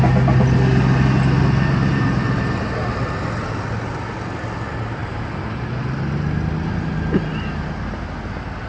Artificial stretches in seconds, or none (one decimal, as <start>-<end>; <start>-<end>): none